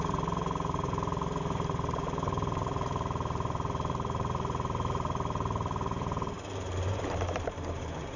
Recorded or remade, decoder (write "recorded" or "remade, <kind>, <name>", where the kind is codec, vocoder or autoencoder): remade, vocoder, BigVGAN v2